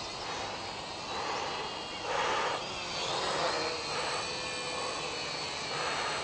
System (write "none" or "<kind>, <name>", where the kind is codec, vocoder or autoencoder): none